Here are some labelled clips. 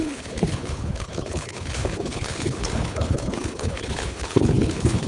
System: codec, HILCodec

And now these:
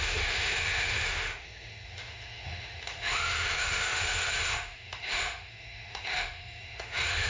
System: autoencoder, DAC-VAE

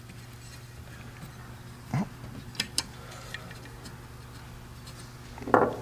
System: none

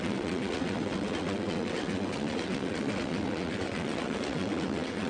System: vocoder, WaveNeXt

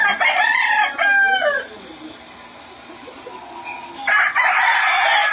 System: none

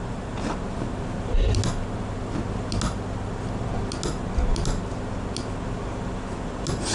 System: none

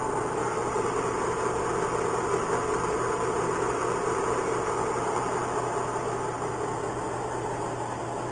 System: none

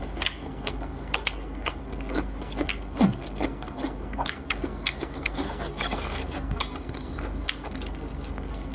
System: codec, SNAC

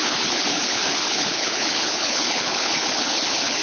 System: codec, HILCodec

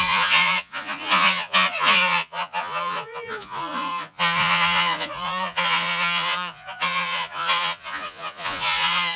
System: vocoder, Vocos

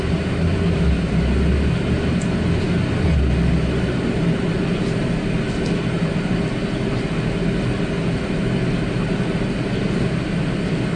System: none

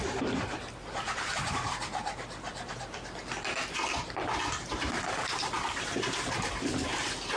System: none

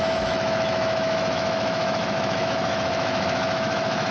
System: autoencoder, DAC-VAE